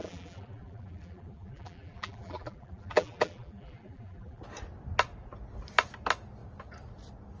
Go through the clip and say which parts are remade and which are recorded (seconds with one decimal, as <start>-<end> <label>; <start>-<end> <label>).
0.0-4.4 remade; 4.4-7.4 recorded